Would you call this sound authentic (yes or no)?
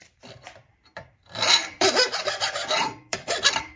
no